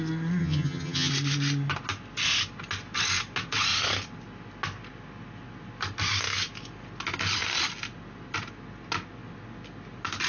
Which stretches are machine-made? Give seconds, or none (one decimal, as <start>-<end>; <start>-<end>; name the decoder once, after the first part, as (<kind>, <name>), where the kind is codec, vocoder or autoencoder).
0.4-1.1 (vocoder, HiFi-GAN)